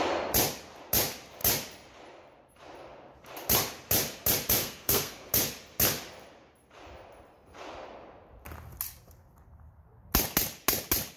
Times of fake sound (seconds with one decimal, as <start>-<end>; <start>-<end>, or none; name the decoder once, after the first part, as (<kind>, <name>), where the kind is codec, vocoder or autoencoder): 4.6-5.3 (codec, SNAC)